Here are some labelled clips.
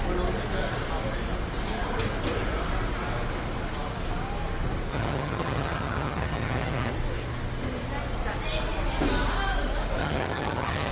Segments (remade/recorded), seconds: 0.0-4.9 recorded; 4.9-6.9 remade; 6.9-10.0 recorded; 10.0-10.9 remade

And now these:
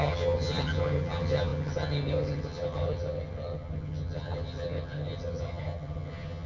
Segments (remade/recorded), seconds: 0.0-6.5 remade

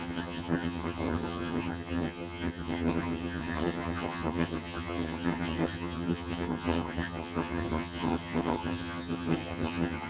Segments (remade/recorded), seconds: 0.0-10.1 remade

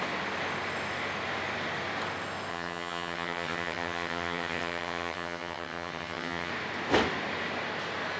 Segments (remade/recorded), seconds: 0.0-2.5 recorded; 2.5-6.5 remade; 6.5-8.2 recorded

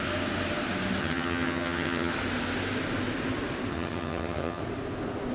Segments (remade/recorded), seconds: 0.0-1.0 recorded; 1.0-2.1 remade; 2.1-3.7 recorded; 3.7-4.6 remade; 4.6-5.3 recorded

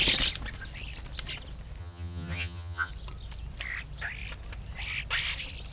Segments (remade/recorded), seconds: 0.0-1.8 recorded; 1.8-2.9 remade; 2.9-5.7 recorded

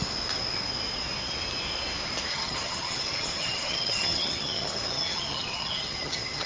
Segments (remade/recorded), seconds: 0.0-2.3 recorded; 2.3-6.5 remade